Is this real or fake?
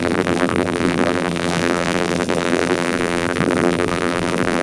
fake